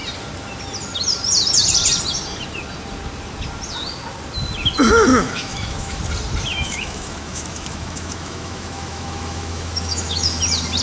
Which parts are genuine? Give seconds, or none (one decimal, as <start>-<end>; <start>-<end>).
0.0-5.1; 6.0-6.5; 10.4-10.8

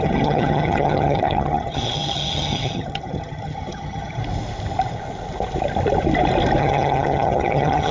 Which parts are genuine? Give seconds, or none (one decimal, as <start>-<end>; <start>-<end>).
4.2-6.6

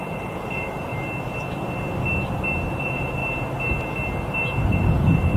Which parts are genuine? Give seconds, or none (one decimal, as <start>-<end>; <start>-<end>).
0.9-2.8; 3.2-4.8

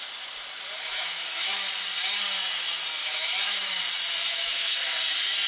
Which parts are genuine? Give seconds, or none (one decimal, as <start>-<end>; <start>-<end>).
0.0-0.9; 1.7-3.0; 3.8-4.3; 4.8-5.5

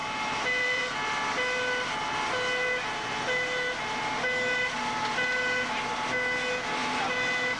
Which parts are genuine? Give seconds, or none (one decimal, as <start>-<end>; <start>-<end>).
0.8-6.8

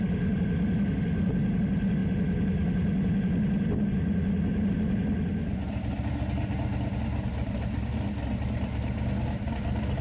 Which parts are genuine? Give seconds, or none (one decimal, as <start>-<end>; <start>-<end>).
0.0-10.0

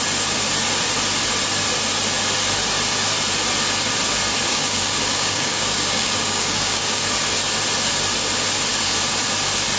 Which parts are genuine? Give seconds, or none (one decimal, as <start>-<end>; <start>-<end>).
0.0-4.5; 7.0-9.8